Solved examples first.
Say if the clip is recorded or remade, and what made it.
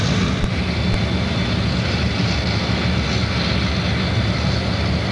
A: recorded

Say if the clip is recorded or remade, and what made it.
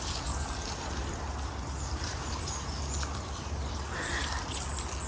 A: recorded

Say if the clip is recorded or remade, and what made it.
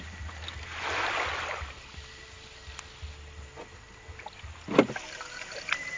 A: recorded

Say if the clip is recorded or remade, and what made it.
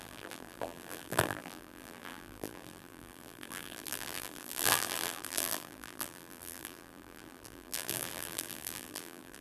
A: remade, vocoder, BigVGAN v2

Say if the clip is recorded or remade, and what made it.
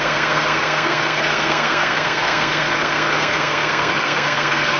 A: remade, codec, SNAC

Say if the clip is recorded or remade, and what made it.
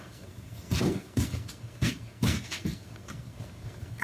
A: remade, codec, SNAC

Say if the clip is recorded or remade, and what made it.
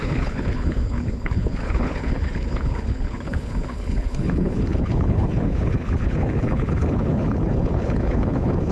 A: remade, codec, HILCodec